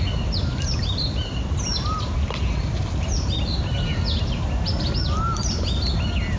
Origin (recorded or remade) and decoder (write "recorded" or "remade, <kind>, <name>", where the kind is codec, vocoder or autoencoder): recorded